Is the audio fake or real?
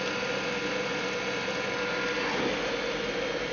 real